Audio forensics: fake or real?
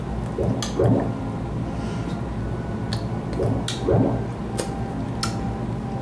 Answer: real